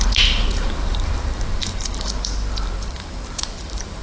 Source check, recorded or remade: remade